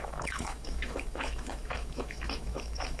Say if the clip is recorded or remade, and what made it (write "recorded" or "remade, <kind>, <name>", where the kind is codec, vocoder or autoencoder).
remade, autoencoder, DAC-VAE